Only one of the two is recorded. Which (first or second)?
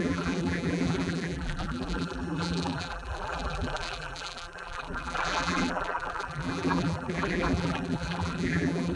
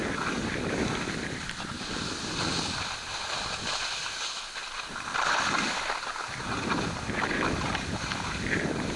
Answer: second